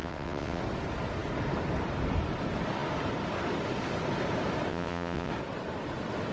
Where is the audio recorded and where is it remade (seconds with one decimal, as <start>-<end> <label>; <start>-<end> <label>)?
0.0-0.6 remade; 0.6-4.7 recorded; 4.7-5.3 remade; 5.3-6.3 recorded